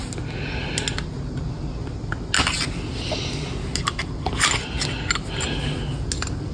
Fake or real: real